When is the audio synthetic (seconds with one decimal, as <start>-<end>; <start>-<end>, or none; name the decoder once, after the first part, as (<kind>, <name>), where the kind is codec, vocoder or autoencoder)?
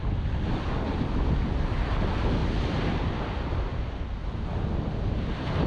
none